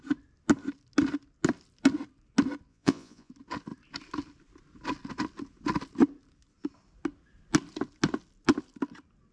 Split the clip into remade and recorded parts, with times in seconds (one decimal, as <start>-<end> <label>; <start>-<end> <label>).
0.0-2.7 recorded; 2.7-3.3 remade; 3.3-9.3 recorded